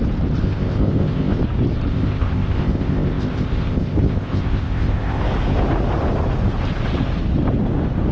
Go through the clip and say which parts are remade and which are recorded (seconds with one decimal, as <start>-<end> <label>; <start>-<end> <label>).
0.0-0.4 recorded; 0.4-1.4 remade; 1.4-1.9 recorded; 1.9-5.2 remade; 5.2-8.1 recorded

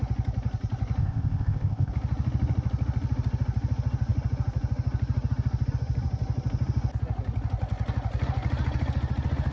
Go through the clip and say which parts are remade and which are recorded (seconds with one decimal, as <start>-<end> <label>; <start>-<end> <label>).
0.0-1.0 recorded; 1.0-1.9 remade; 1.9-9.5 recorded

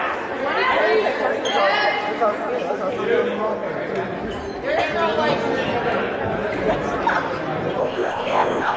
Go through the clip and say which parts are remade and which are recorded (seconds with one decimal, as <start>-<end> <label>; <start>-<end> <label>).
0.0-7.8 recorded; 7.8-8.8 remade

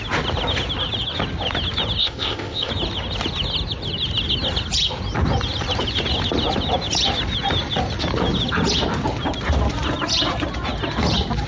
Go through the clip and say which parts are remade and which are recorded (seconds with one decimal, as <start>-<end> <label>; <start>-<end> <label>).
0.0-2.0 recorded; 2.0-2.7 remade; 2.7-11.5 recorded

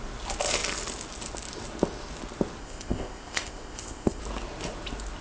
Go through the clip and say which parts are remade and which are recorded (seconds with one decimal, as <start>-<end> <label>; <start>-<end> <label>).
0.0-2.6 recorded; 2.6-4.2 remade; 4.2-5.2 recorded

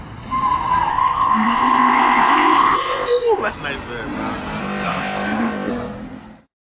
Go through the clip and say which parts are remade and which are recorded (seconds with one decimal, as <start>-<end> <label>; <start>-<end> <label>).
0.0-0.9 recorded; 0.9-3.5 remade; 3.5-4.6 recorded; 4.6-5.7 remade; 5.7-6.7 recorded

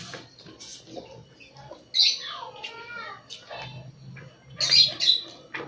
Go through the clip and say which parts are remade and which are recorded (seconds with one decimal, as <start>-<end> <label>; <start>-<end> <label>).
0.0-5.7 recorded

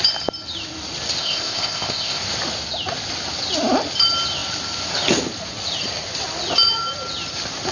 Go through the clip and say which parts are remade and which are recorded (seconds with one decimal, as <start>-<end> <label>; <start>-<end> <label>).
0.0-1.2 recorded; 1.2-2.2 remade; 2.2-7.7 recorded